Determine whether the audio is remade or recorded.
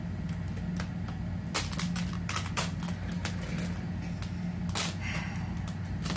recorded